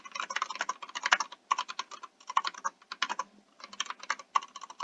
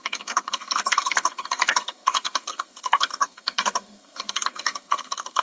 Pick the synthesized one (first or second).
second